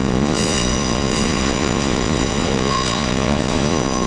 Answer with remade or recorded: remade